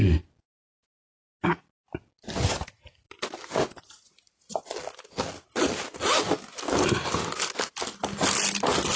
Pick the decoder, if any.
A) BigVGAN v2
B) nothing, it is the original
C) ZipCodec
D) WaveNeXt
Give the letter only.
B